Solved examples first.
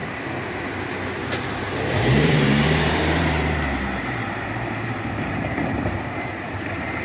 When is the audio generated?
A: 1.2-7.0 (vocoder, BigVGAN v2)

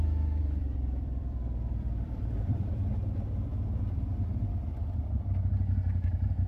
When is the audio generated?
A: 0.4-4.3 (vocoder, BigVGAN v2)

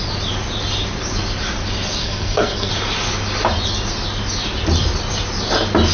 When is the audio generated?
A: 2.0-2.7 (codec, SNAC)